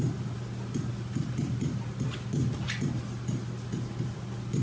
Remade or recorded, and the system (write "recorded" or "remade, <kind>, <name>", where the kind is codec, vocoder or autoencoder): recorded